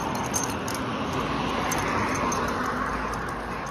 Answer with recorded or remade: recorded